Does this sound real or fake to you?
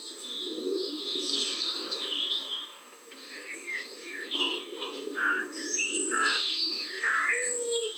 fake